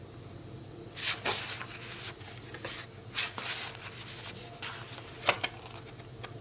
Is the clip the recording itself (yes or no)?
yes